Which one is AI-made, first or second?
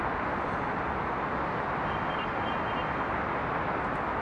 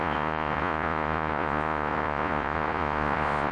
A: second